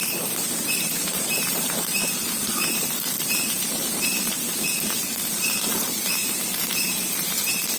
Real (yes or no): no